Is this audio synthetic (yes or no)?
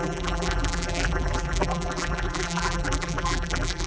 yes